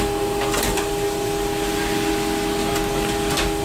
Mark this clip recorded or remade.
recorded